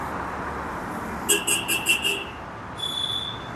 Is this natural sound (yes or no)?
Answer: yes